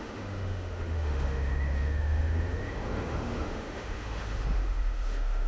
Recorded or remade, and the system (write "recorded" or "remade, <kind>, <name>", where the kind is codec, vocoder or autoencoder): remade, autoencoder, DAC-VAE